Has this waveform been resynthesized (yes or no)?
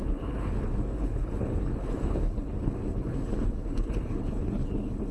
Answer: yes